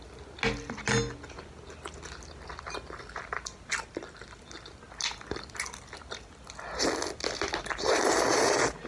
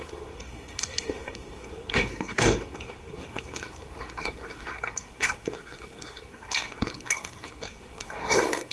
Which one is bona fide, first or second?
first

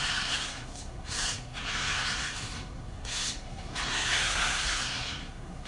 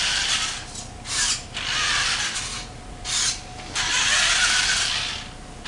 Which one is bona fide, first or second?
second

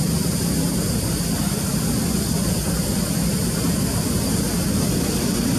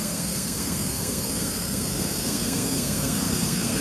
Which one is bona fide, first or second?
first